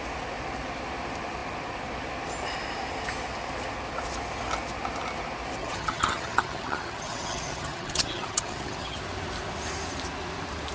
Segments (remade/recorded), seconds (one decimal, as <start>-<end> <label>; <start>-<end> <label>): 0.0-5.6 recorded; 5.6-9.0 remade; 9.0-10.7 recorded